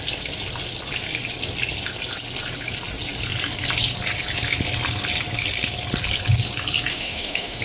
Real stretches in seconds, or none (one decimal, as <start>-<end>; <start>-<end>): 0.0-6.9